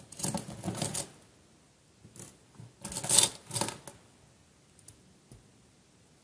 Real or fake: real